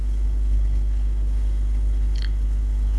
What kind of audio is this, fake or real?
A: fake